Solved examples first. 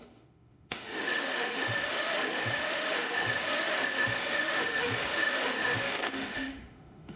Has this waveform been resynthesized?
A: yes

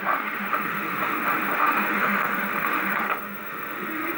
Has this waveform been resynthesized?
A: yes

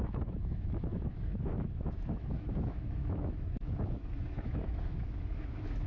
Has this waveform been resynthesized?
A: yes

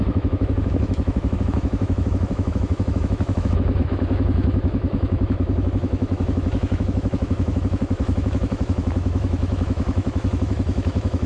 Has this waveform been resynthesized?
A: yes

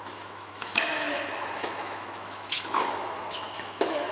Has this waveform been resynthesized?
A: yes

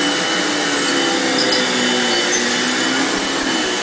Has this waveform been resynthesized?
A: no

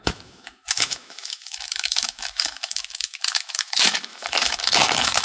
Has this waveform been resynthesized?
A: yes